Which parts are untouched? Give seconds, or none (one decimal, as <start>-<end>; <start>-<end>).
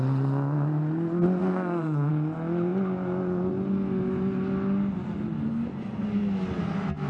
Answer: 0.0-1.4; 2.1-7.1